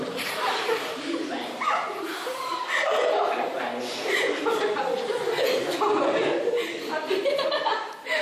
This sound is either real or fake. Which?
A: fake